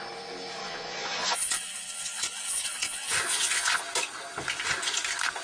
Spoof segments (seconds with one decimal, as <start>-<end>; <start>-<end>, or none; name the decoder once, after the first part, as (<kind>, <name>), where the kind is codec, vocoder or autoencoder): 0.6-3.8 (vocoder, Vocos)